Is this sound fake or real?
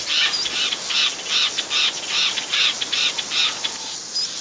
real